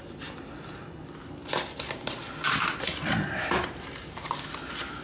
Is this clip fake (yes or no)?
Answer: no